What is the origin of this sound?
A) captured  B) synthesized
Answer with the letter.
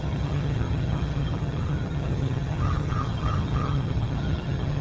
B